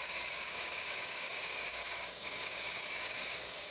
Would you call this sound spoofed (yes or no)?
yes